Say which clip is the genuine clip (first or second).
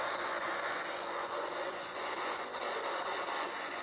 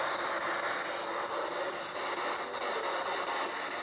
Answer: second